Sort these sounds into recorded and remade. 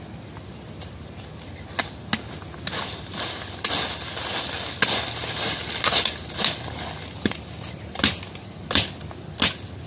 recorded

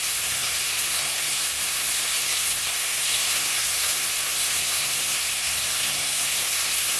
remade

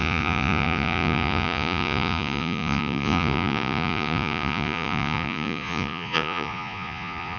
remade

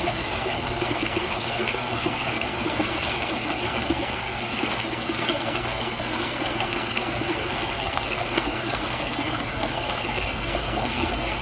remade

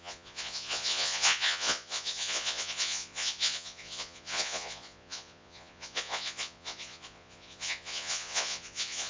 remade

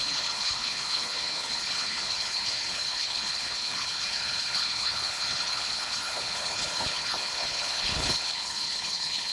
remade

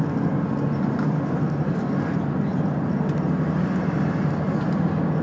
recorded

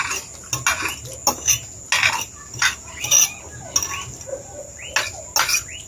recorded